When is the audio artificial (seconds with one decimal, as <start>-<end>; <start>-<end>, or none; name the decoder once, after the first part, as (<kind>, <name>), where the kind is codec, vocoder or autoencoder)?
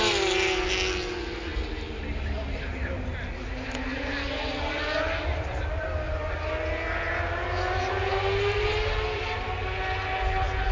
none